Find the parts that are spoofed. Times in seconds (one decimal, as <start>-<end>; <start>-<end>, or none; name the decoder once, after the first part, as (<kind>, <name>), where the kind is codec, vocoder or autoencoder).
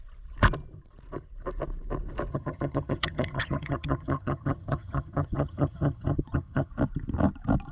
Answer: 2.3-6.7 (vocoder, HiFi-GAN)